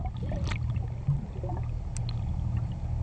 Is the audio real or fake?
real